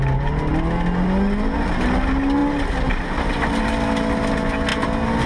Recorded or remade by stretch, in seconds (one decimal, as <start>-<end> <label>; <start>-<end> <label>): 0.0-5.3 recorded